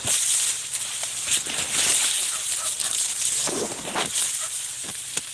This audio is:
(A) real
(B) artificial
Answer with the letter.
B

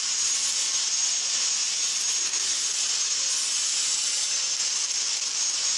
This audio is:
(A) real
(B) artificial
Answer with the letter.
A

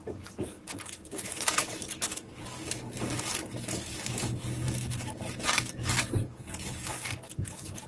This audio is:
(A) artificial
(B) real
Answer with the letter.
A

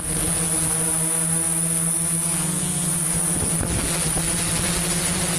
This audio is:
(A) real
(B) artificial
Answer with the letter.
A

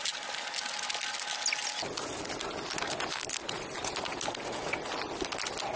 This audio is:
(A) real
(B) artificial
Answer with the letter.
A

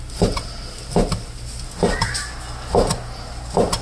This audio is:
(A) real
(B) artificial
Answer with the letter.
A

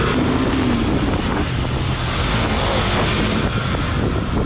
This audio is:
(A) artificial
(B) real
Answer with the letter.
B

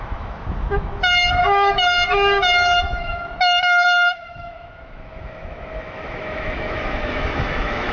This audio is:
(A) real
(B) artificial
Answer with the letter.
B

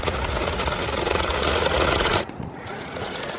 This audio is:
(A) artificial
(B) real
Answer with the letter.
A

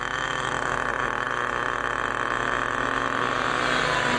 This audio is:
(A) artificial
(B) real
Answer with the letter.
B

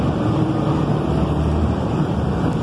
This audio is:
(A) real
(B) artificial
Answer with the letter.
B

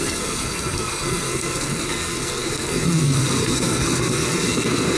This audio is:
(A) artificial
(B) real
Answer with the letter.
A